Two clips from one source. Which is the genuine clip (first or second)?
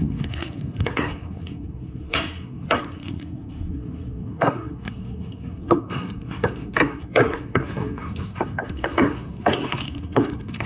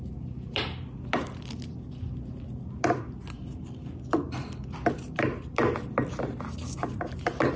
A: second